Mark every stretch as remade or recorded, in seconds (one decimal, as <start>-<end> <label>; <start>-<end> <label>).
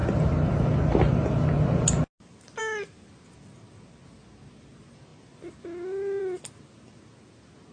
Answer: 0.0-7.7 recorded